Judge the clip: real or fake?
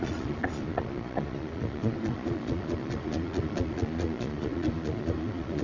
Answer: fake